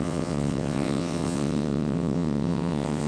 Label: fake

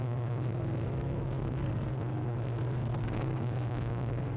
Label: fake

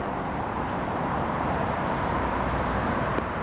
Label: fake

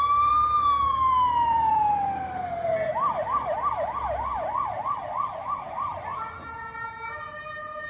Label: fake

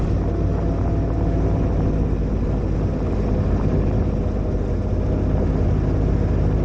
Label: real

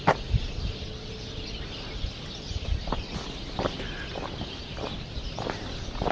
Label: real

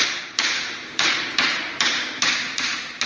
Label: fake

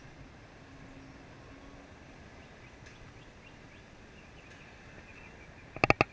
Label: real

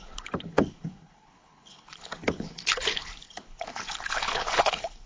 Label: fake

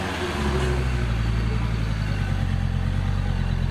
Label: real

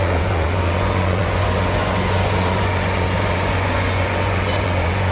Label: fake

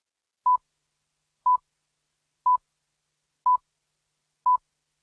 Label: real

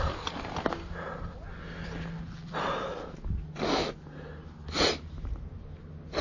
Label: real